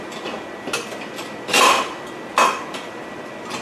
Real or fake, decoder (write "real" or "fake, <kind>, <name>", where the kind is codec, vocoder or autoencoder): real